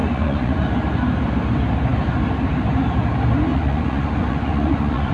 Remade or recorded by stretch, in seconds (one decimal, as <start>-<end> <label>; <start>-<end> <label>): 0.0-0.6 remade; 0.6-3.5 recorded; 3.5-5.1 remade